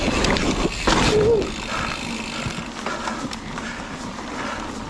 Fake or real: real